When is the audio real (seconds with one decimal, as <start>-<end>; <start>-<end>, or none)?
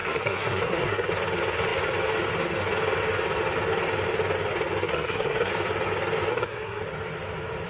1.1-4.8; 5.5-6.3; 6.8-7.7